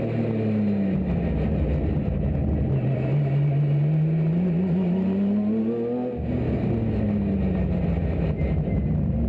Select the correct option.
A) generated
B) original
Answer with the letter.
B